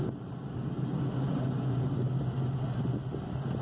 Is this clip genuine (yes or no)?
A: yes